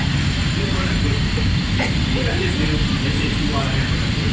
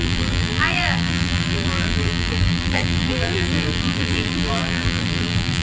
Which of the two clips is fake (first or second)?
second